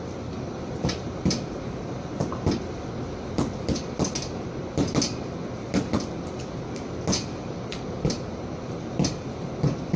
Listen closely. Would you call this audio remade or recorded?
recorded